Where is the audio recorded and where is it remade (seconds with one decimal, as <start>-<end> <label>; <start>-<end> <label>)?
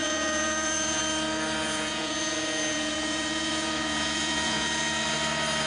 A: 0.0-1.0 remade; 1.0-1.6 recorded; 1.6-5.0 remade; 5.0-5.7 recorded